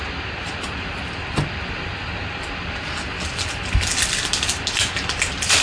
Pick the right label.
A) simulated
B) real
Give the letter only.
B